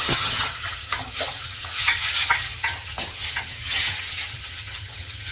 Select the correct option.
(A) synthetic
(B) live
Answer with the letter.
A